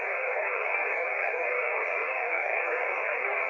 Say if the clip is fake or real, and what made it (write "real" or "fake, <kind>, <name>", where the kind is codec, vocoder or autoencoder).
fake, codec, DAC